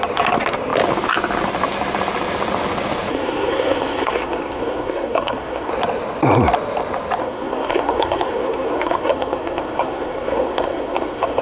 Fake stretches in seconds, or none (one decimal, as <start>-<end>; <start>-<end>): 3.1-5.7; 7.2-11.4